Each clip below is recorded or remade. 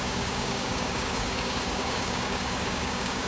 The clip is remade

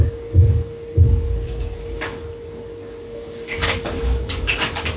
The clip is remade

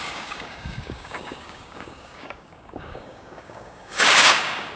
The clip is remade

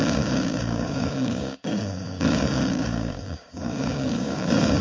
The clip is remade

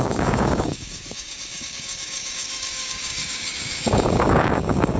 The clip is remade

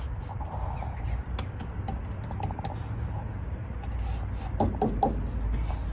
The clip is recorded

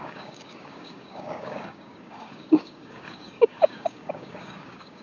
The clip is remade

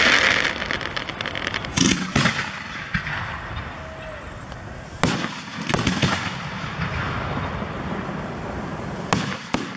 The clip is recorded